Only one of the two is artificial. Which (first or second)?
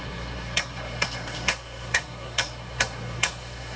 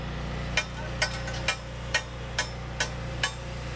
first